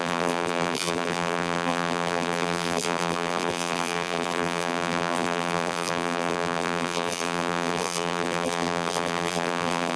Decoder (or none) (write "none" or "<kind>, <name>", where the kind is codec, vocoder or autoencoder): vocoder, BigVGAN v2